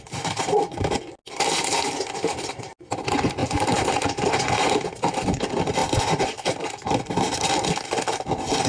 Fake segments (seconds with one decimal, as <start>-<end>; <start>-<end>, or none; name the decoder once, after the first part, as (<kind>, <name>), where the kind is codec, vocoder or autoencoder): none